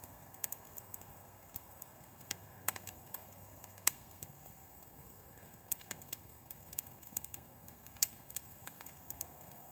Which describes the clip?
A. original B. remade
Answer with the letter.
B